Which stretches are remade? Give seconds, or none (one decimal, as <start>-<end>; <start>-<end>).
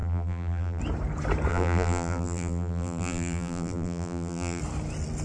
0.0-0.8; 1.5-4.6